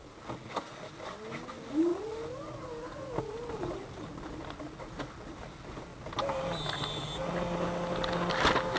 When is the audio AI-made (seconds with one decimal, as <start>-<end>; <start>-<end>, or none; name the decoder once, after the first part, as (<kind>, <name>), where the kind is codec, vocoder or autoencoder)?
none